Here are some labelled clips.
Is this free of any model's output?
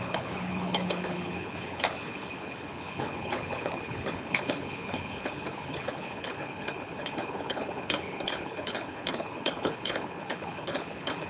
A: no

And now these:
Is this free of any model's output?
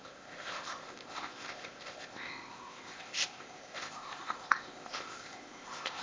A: no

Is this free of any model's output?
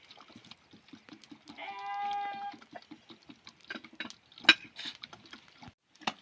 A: yes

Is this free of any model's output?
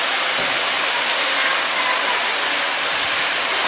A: yes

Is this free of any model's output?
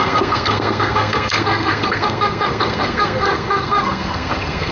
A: no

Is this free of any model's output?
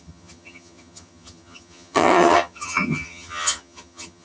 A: no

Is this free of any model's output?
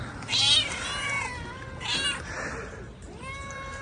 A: yes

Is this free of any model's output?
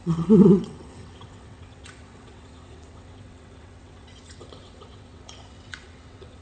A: no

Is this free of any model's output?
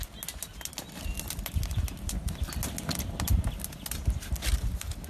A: yes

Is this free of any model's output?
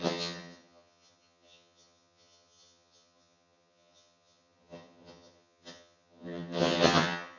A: no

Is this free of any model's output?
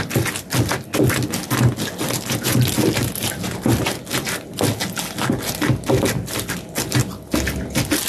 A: yes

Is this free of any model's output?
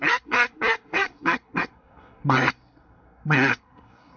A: no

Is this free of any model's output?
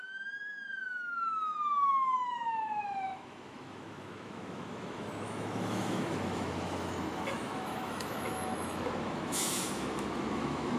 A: no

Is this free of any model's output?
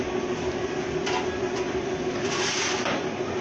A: yes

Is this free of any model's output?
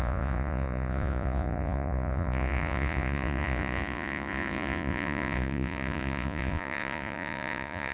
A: no